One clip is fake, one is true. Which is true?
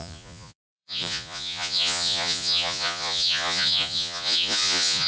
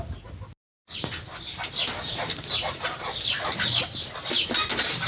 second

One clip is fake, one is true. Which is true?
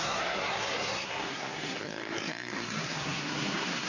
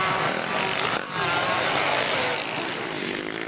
second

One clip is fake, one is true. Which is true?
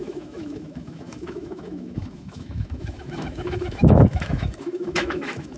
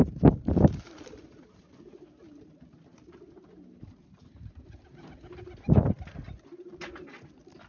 second